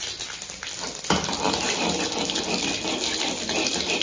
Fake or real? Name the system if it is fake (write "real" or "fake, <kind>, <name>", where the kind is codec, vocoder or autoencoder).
real